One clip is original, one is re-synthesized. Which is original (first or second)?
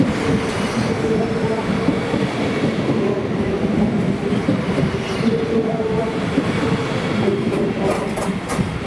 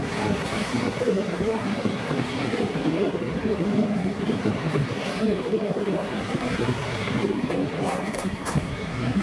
first